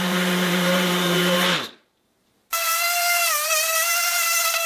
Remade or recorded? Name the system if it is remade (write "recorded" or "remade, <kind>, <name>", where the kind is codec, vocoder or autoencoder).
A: remade, vocoder, BigVGAN v2